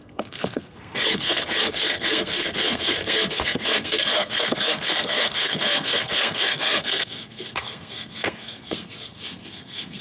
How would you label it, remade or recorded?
remade